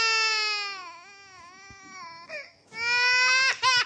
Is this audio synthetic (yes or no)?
no